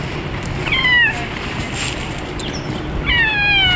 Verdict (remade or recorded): recorded